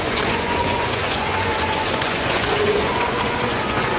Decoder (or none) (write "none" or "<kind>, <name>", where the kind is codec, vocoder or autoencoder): vocoder, Vocos